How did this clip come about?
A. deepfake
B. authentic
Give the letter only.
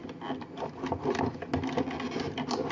B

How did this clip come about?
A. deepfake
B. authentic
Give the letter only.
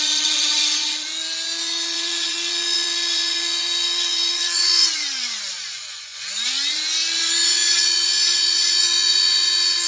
A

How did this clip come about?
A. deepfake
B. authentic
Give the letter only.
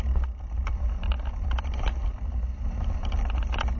B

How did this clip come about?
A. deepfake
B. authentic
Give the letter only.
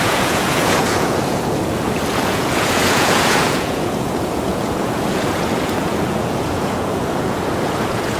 A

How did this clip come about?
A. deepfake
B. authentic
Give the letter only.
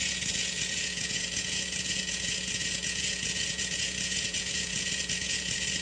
A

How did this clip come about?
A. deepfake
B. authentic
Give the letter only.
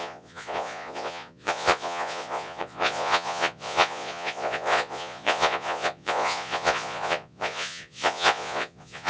A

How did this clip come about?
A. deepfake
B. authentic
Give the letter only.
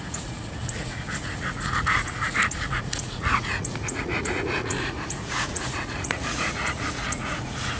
A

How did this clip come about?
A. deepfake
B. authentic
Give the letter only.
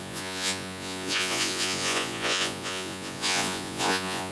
A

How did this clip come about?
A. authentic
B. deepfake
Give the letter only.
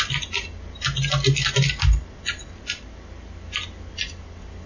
A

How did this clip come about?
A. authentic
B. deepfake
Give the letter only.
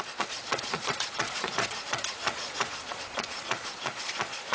B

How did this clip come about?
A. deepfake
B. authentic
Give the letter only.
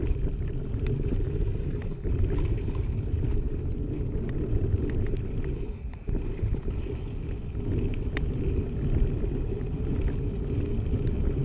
B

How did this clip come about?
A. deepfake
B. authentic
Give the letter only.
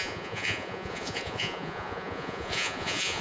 A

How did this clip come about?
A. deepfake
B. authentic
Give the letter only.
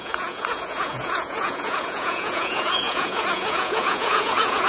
A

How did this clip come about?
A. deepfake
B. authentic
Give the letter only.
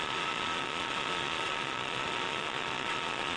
A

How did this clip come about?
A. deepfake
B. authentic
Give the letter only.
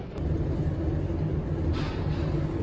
B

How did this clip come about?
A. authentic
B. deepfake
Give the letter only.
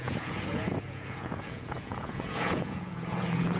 B